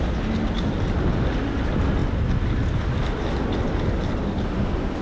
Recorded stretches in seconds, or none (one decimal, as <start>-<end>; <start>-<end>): 0.0-5.0